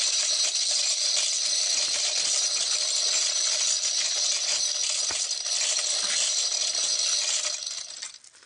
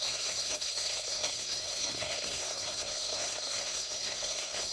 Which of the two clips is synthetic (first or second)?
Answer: second